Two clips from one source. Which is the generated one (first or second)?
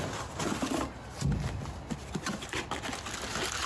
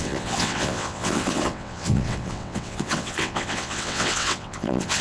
second